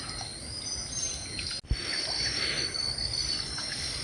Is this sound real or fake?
real